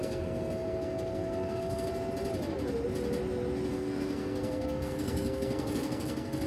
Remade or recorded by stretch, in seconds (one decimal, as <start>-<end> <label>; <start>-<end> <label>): 0.0-1.9 remade; 1.9-3.7 recorded; 3.7-6.5 remade